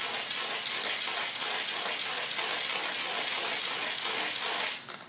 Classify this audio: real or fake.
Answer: real